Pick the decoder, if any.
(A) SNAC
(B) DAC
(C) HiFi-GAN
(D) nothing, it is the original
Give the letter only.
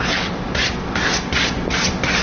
D